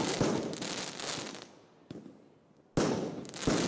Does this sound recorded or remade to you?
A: recorded